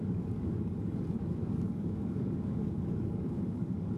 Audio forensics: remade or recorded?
remade